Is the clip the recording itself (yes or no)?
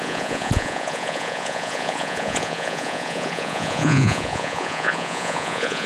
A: no